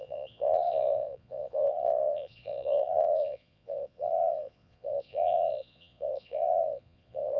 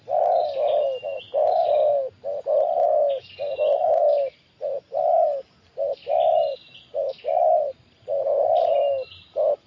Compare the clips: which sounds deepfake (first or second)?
first